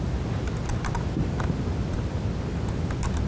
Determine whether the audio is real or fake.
real